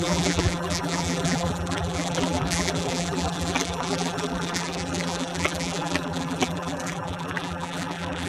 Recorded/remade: remade